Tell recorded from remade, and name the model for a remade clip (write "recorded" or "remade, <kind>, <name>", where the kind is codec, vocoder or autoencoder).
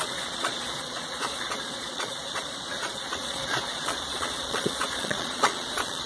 remade, vocoder, Vocos